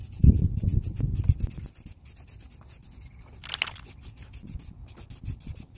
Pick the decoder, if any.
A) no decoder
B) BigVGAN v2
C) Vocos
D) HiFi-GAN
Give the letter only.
A